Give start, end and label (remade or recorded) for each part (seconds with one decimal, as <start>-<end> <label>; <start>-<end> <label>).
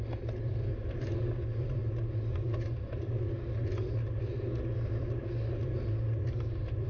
0.0-6.9 recorded